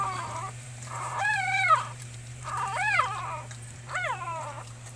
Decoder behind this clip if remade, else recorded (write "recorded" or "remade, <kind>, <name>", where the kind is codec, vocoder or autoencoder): remade, vocoder, BigVGAN v2